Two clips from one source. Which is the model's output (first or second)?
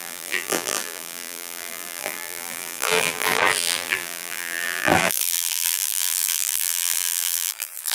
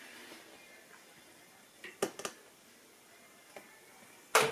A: first